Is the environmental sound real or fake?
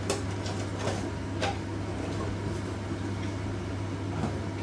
real